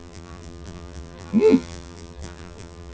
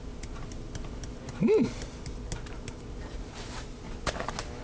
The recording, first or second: second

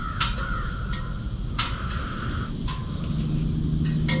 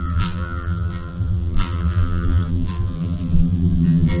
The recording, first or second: first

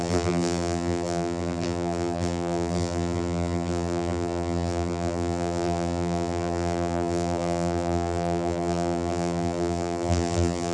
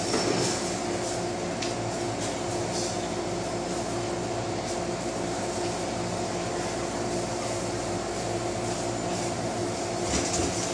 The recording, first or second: second